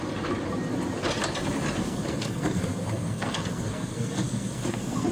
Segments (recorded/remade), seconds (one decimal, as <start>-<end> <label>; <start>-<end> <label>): 0.0-1.8 recorded; 1.8-5.1 remade